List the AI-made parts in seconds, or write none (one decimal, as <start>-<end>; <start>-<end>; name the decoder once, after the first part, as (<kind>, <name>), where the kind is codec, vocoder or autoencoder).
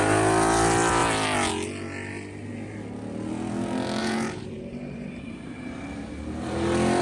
4.0-6.1 (vocoder, BigVGAN v2)